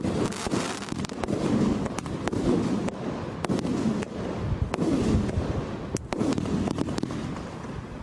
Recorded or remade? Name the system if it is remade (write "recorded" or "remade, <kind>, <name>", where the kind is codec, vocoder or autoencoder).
recorded